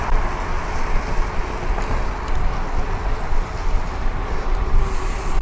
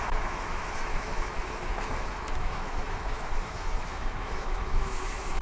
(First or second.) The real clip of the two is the first